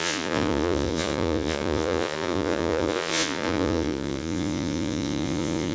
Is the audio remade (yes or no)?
yes